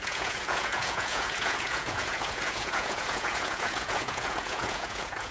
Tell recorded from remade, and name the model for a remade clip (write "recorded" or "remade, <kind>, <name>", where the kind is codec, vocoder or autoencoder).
remade, vocoder, Vocos